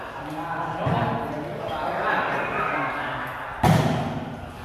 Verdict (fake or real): real